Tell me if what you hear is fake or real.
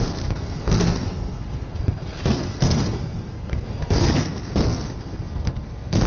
fake